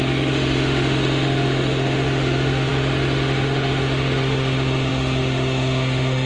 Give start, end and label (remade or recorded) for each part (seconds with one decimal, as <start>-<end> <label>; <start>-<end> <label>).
0.0-6.3 remade